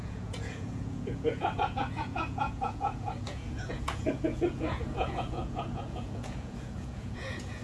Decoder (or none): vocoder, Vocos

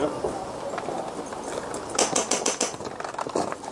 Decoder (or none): none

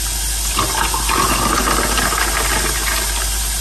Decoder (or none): none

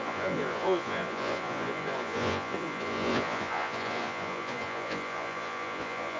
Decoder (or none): vocoder, Vocos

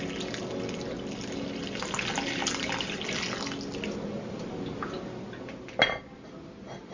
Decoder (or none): none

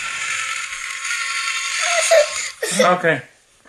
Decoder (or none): vocoder, BigVGAN v2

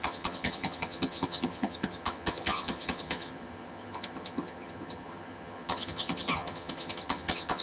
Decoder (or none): vocoder, HiFi-GAN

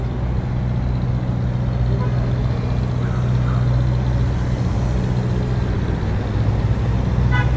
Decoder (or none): none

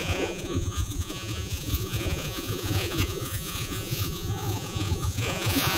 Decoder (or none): vocoder, Vocos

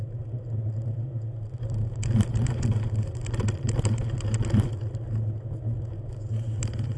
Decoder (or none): none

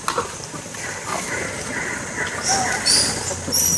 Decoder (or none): none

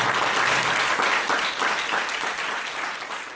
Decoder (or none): none